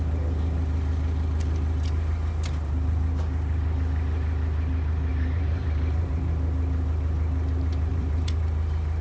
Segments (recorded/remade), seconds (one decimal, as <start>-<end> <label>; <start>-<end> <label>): 0.0-5.1 recorded; 5.1-6.3 remade; 6.3-7.9 recorded; 7.9-8.4 remade; 8.4-9.0 recorded